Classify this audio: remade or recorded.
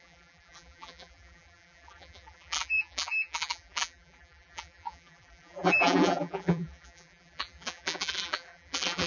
remade